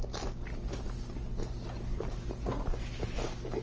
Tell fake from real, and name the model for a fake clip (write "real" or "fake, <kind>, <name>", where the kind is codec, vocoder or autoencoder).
real